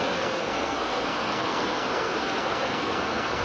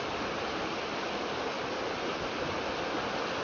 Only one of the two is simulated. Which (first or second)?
first